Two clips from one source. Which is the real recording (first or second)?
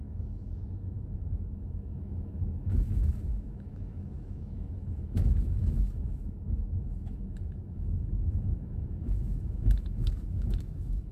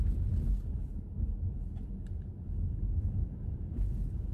second